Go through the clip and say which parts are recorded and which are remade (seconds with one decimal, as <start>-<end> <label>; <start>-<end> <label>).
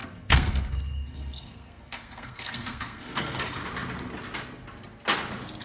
0.0-3.4 remade; 3.4-5.6 recorded